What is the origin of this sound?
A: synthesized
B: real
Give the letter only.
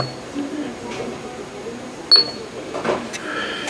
B